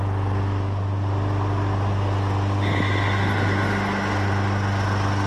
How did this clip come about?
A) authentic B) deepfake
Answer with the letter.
A